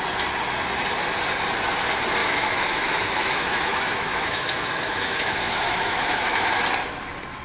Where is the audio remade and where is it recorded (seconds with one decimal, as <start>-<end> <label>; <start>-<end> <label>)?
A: 0.0-2.2 recorded; 2.2-6.6 remade; 6.6-7.4 recorded